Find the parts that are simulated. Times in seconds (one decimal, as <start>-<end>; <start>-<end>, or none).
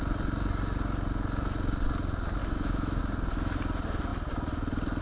2.4-3.0